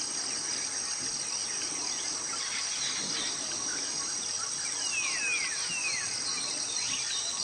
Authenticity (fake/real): real